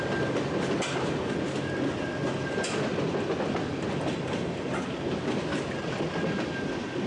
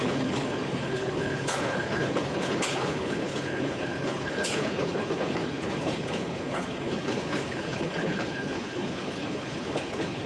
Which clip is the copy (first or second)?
second